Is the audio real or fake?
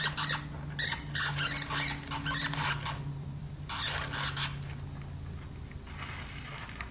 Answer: real